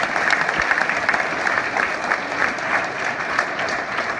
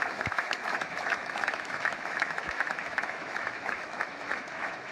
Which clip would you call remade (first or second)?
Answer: second